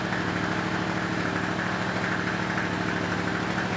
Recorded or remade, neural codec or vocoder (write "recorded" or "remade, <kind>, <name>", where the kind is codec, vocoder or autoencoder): recorded